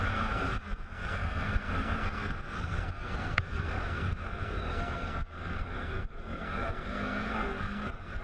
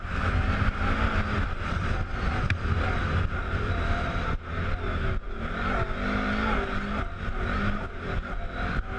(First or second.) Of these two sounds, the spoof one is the first